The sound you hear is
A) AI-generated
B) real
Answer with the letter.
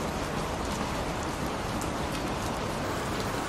B